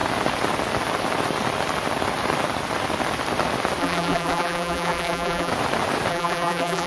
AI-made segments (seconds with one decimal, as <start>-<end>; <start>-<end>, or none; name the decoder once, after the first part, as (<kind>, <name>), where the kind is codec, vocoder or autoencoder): 3.8-5.5 (vocoder, BigVGAN v2); 6.1-6.9